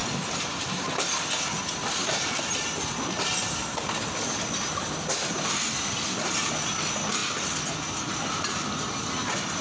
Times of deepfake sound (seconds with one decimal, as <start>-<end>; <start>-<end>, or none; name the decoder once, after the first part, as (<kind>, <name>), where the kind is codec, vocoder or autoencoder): 0.0-0.6 (vocoder, BigVGAN v2)